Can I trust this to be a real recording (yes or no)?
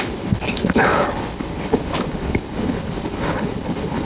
no